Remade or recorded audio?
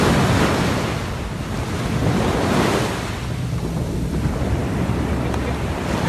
recorded